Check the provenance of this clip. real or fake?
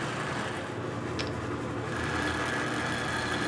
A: real